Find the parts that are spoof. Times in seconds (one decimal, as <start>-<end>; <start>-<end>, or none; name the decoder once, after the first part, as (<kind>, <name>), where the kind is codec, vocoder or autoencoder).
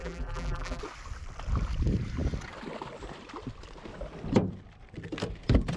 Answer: 0.0-0.8 (vocoder, BigVGAN v2)